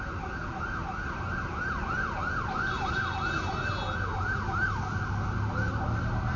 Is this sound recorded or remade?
recorded